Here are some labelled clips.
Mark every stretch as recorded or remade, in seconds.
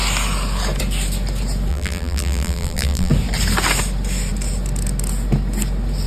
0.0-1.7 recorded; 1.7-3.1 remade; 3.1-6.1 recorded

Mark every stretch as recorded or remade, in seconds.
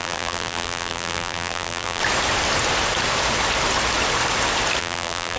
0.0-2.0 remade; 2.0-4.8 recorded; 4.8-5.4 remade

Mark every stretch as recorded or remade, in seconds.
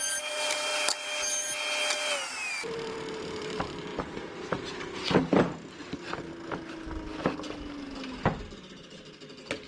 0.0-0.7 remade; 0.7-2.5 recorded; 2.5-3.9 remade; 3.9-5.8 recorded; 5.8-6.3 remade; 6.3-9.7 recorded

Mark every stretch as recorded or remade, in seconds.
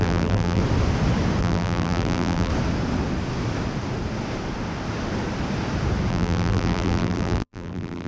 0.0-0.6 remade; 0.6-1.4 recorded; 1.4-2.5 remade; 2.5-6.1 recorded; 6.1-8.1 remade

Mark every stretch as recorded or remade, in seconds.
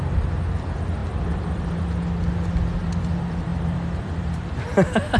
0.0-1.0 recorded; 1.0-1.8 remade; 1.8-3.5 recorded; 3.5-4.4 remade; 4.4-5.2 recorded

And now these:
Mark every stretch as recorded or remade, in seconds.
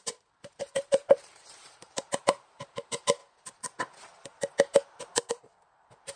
0.0-3.2 remade; 3.2-5.3 recorded; 5.3-6.2 remade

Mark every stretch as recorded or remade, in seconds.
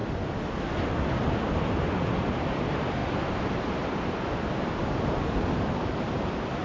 0.0-3.0 recorded; 3.0-3.7 remade; 3.7-6.6 recorded